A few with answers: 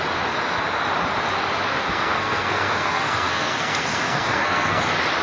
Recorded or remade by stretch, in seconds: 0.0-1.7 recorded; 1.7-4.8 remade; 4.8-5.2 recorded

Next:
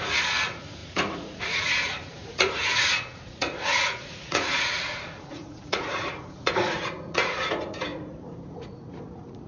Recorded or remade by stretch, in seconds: 0.0-9.5 remade

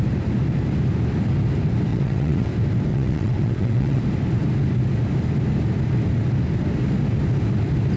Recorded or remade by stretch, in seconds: 0.0-1.9 recorded; 1.9-2.5 remade; 2.5-2.9 recorded; 2.9-4.0 remade; 4.0-8.0 recorded

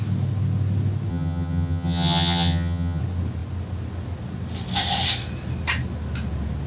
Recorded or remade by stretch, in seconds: 0.0-1.1 recorded; 1.1-3.0 remade; 3.0-6.7 recorded

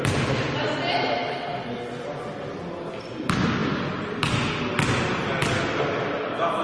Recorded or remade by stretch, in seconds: 0.0-6.6 recorded

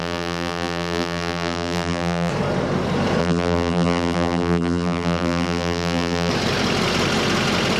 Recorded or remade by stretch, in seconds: 0.0-2.3 remade; 2.3-3.2 recorded; 3.2-6.3 remade; 6.3-7.8 recorded

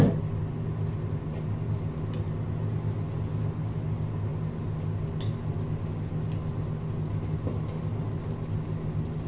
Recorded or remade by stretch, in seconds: 0.0-9.3 recorded

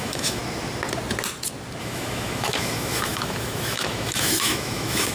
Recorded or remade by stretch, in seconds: 0.0-0.4 remade; 0.4-1.8 recorded; 1.8-5.1 remade